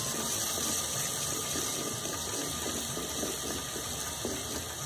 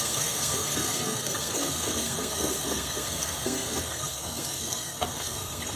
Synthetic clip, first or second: second